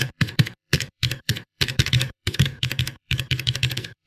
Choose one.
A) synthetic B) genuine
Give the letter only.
A